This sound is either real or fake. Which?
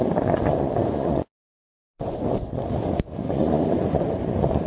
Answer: fake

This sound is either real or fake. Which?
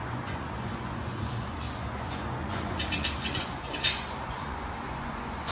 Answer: fake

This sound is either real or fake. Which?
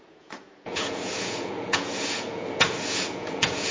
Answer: fake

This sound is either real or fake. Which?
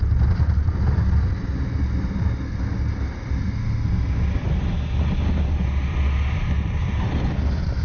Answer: real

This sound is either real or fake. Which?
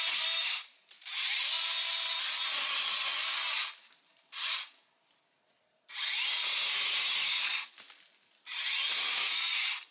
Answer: real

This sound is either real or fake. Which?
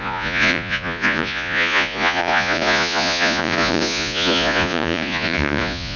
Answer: fake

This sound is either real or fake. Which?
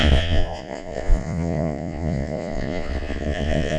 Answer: fake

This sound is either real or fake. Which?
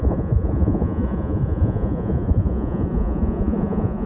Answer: fake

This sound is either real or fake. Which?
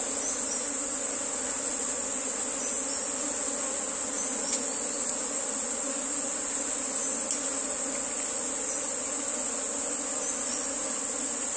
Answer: real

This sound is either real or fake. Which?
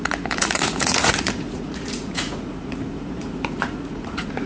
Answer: fake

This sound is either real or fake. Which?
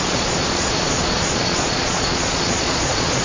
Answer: fake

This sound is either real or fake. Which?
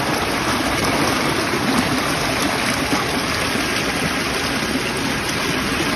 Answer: real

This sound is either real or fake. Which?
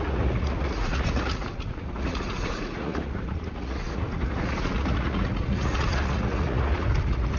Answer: fake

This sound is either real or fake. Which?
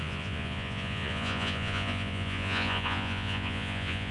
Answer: fake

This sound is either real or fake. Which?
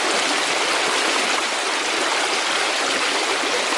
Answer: real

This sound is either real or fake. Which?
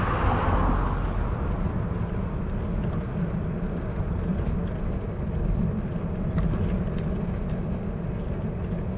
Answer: real